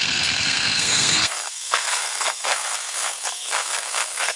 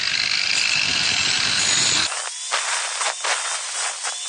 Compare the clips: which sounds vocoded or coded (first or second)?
first